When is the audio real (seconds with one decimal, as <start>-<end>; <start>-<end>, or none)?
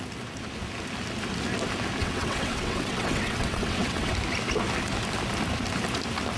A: 0.0-2.0; 4.1-6.4